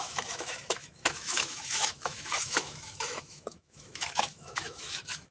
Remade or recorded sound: remade